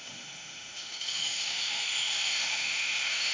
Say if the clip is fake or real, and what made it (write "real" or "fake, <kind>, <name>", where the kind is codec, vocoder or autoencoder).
fake, autoencoder, DAC-VAE